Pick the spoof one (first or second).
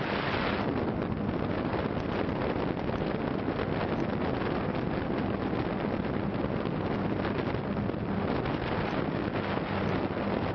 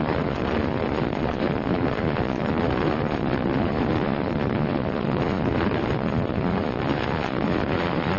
second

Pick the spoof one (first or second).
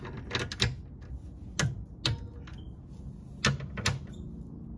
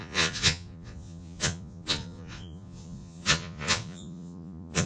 second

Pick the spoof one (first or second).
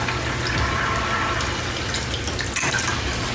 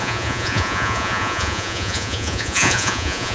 second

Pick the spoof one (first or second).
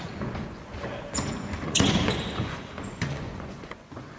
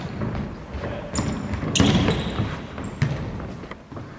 first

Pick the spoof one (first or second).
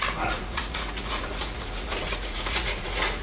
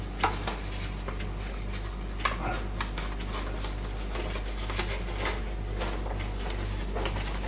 first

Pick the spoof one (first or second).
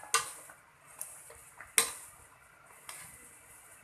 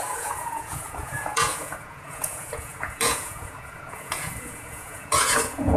second